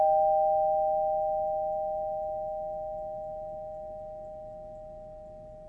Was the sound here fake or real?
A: real